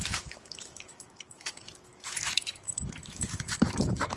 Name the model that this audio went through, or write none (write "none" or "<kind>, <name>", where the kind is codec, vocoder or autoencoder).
autoencoder, DAC-VAE